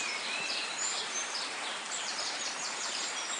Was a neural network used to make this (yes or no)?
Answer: yes